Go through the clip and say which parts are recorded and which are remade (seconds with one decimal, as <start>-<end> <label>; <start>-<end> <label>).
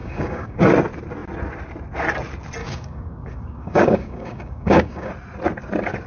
0.0-0.6 remade; 0.6-2.6 recorded; 2.6-5.1 remade; 5.1-6.1 recorded